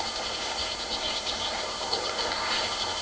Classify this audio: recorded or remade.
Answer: remade